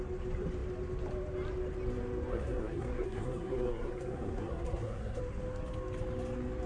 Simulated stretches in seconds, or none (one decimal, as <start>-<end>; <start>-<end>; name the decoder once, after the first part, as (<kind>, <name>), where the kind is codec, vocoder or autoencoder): 2.3-5.2 (codec, SNAC)